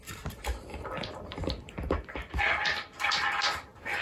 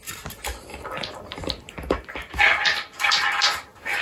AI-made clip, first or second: first